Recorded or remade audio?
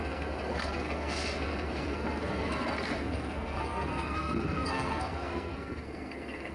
remade